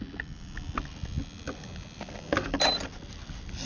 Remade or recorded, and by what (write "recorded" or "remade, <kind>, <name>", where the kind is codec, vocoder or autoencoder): recorded